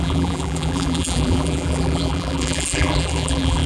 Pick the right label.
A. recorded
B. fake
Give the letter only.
B